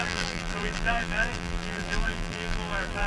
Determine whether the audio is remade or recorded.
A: remade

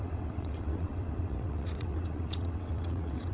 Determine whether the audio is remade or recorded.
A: remade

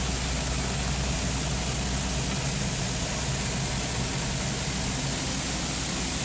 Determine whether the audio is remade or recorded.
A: recorded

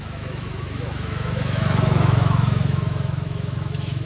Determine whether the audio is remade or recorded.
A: remade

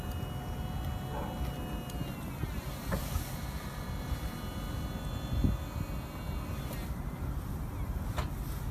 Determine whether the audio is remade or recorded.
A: recorded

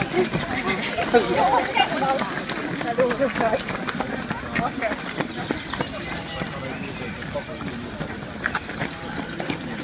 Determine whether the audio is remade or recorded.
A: recorded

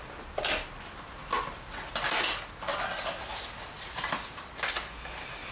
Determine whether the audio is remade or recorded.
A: recorded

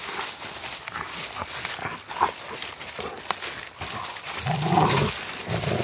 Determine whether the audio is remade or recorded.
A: recorded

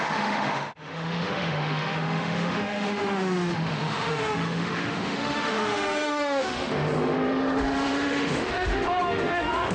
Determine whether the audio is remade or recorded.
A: remade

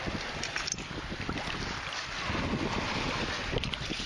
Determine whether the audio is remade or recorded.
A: recorded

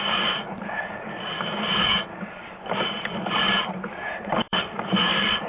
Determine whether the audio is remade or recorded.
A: remade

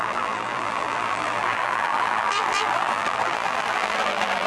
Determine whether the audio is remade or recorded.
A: remade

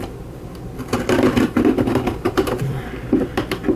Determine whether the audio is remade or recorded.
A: remade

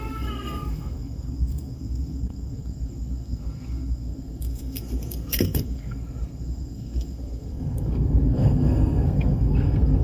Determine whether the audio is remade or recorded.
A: remade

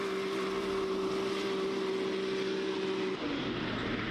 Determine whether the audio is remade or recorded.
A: recorded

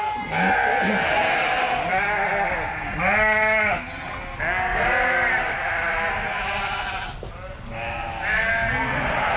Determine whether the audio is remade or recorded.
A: recorded